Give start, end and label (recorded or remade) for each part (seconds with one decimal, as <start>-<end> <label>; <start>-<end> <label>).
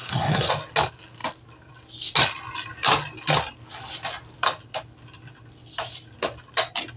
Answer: 0.0-0.5 remade; 0.5-7.0 recorded